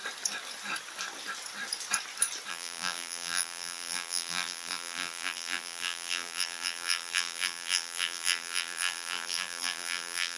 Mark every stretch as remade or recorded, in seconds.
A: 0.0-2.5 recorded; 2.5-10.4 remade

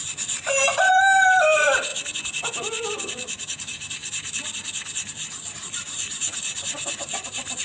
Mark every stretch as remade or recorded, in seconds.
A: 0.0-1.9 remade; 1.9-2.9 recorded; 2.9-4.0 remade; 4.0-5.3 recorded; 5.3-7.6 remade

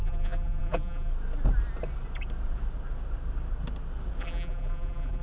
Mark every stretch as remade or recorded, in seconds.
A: 0.0-1.1 remade; 1.1-4.2 recorded; 4.2-5.2 remade

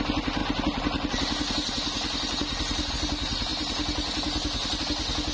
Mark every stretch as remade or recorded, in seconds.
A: 0.0-5.3 recorded

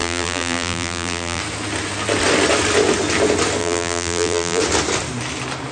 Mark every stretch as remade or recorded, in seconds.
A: 0.0-1.4 remade; 1.4-3.6 recorded; 3.6-4.6 remade; 4.6-5.7 recorded

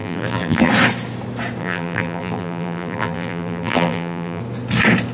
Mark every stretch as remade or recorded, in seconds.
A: 0.0-0.7 remade; 0.7-1.6 recorded; 1.6-4.4 remade; 4.4-5.1 recorded

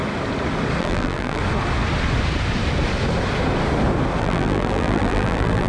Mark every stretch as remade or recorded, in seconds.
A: 0.0-0.8 recorded; 0.8-1.4 remade; 1.4-4.2 recorded; 4.2-5.7 remade